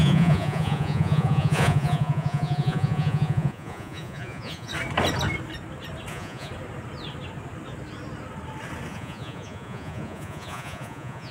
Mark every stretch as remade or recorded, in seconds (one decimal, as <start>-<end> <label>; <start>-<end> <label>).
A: 0.0-4.7 remade; 4.7-6.1 recorded; 6.1-6.5 remade; 6.5-8.9 recorded; 8.9-11.3 remade